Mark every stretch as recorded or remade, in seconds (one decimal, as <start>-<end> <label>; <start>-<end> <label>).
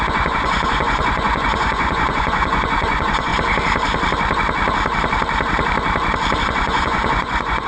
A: 0.0-3.3 remade; 3.3-6.4 recorded; 6.4-7.7 remade